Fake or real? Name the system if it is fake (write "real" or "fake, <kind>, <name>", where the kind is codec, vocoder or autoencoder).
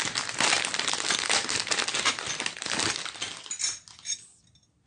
fake, vocoder, BigVGAN v2